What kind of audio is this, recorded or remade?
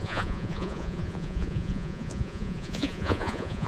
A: remade